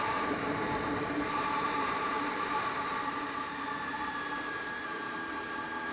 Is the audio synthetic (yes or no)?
yes